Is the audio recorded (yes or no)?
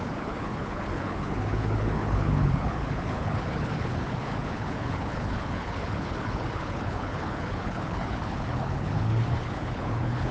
no